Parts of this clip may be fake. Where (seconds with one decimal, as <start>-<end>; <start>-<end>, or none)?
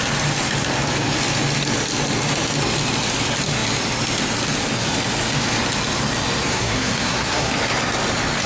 6.5-7.5